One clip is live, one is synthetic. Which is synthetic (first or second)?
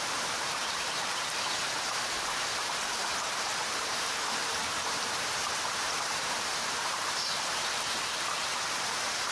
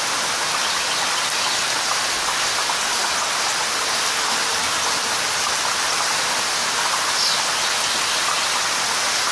first